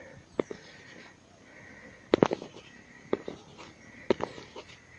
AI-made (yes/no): no